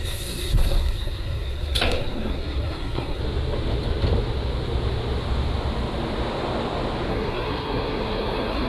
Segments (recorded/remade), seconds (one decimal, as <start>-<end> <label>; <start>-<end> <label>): 0.0-3.2 remade; 3.2-7.1 recorded; 7.1-8.7 remade